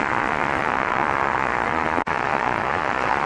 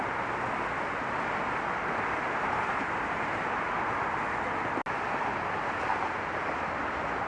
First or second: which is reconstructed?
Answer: first